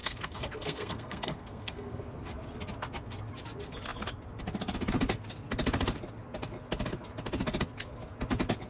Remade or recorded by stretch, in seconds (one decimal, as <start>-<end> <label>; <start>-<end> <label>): 0.0-2.0 remade; 2.0-8.7 recorded